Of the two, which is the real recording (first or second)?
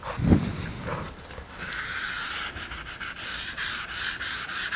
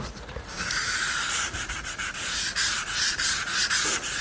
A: first